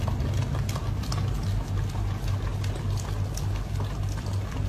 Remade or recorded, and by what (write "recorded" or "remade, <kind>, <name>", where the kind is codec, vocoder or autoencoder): recorded